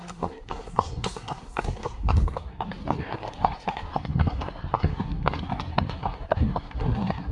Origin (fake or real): fake